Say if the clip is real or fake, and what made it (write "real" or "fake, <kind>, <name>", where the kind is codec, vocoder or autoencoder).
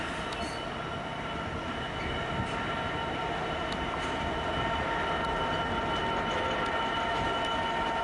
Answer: real